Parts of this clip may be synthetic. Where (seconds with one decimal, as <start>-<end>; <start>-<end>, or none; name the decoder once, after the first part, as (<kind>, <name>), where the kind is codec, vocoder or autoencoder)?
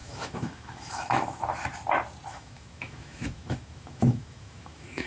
0.0-1.4 (autoencoder, DAC-VAE); 2.3-5.1